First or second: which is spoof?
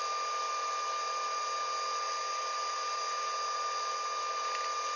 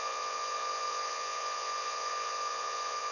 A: second